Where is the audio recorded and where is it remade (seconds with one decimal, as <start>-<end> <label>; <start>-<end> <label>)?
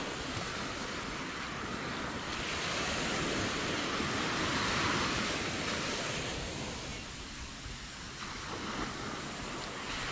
0.0-10.1 recorded